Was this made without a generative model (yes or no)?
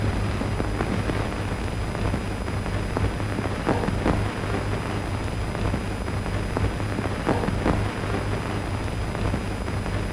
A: yes